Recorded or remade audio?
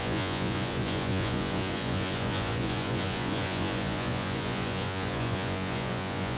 remade